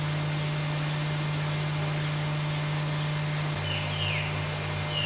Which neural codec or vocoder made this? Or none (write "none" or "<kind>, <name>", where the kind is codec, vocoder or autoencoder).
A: none